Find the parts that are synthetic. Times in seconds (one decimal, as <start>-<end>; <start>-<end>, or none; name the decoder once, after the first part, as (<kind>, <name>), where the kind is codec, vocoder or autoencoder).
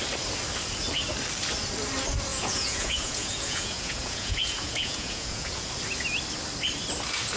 2.3-5.7 (vocoder, Vocos)